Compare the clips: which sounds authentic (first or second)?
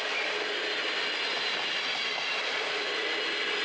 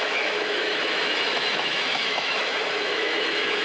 first